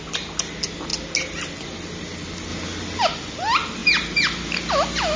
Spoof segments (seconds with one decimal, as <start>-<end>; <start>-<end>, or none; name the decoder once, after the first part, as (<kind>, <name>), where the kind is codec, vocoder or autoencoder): none